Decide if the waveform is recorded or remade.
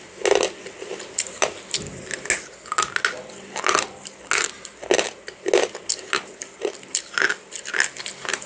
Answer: recorded